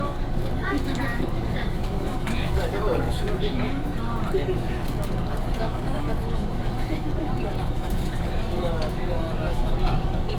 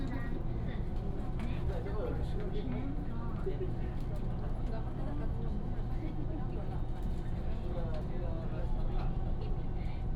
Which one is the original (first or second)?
second